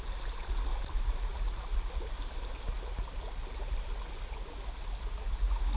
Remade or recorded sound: recorded